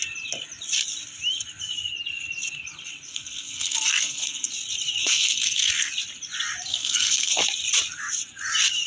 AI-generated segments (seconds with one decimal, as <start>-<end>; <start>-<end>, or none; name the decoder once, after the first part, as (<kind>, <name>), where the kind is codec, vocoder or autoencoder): 3.1-4.5 (codec, SNAC); 5.0-5.9; 6.7-7.4